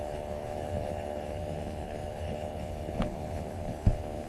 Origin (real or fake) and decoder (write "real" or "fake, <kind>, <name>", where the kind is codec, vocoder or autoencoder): fake, codec, HILCodec